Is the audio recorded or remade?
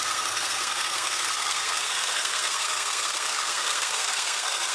remade